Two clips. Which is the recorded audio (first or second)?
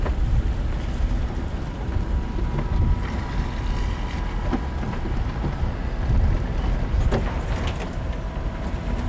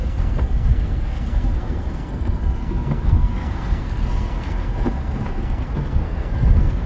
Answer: first